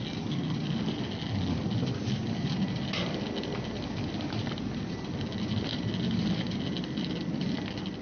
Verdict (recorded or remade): recorded